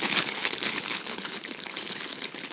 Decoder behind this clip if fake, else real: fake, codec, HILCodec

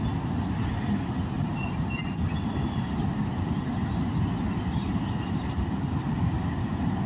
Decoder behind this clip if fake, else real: real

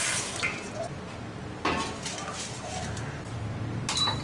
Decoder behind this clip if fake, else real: real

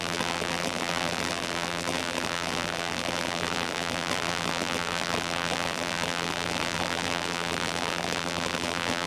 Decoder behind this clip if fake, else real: fake, vocoder, BigVGAN v2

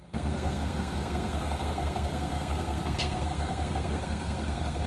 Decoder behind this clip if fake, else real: fake, codec, SNAC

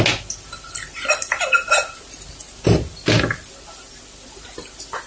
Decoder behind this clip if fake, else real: real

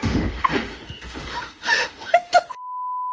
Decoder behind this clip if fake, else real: fake, autoencoder, DAC-VAE